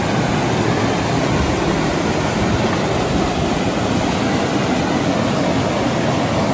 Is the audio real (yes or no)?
yes